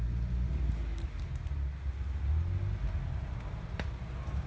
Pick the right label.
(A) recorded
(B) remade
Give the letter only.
A